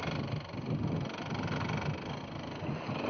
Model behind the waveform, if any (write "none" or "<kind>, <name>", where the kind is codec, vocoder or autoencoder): none